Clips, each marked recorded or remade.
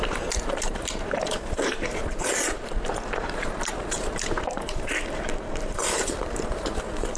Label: remade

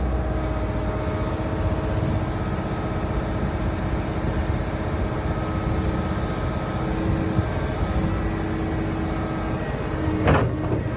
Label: recorded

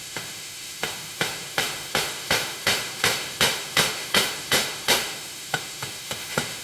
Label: remade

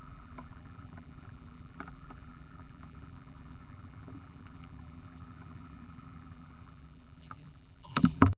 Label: remade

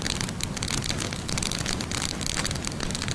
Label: recorded